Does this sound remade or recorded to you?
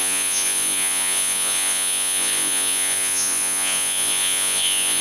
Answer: remade